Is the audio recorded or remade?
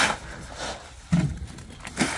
recorded